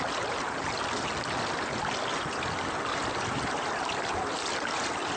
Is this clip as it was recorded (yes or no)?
yes